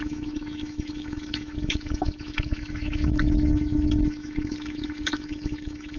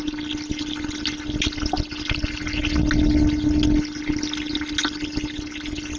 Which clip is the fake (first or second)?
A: first